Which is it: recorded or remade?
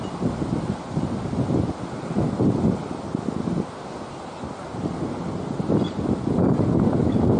recorded